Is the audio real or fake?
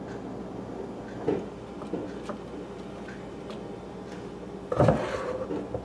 real